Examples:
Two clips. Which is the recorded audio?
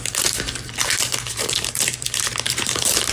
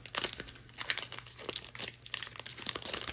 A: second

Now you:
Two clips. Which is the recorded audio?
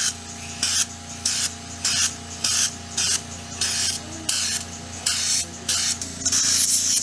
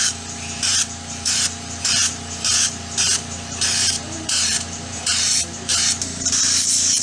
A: first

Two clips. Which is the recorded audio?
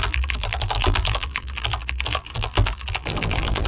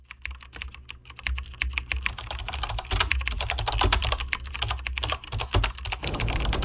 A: second